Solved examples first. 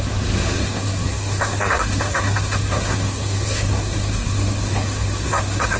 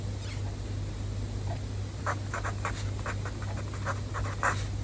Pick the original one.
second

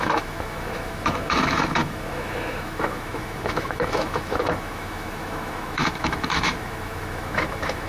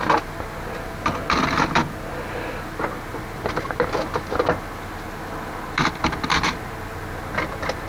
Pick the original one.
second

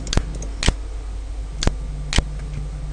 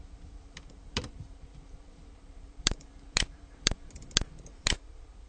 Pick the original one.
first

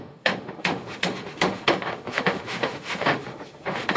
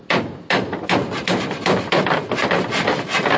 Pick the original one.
second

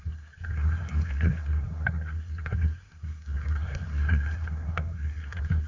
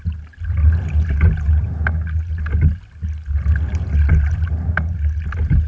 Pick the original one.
second